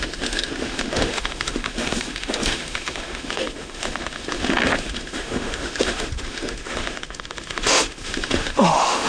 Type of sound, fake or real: fake